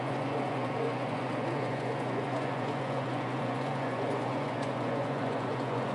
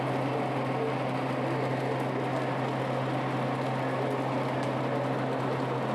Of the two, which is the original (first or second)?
second